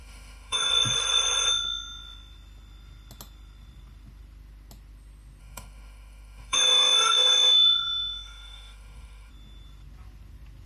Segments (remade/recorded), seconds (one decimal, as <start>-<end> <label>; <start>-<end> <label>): 0.0-0.7 remade; 0.7-5.4 recorded; 5.4-9.3 remade; 9.3-10.7 recorded